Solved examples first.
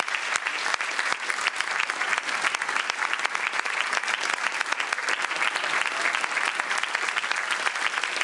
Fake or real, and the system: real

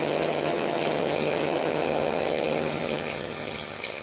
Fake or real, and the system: fake, vocoder, HiFi-GAN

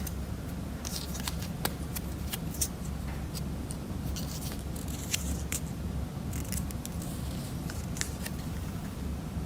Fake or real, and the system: real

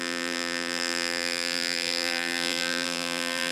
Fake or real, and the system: fake, vocoder, BigVGAN v2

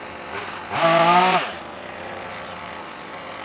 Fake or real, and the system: real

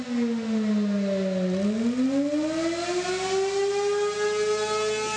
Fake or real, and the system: real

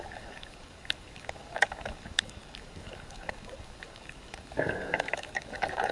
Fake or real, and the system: fake, codec, DAC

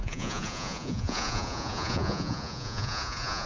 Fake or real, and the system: fake, vocoder, Vocos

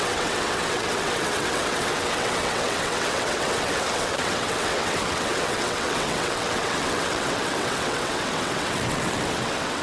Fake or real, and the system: fake, vocoder, WaveNeXt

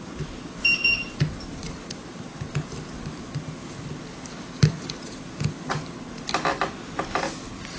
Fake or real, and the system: real